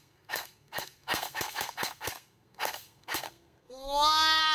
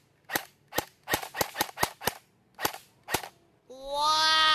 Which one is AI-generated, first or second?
first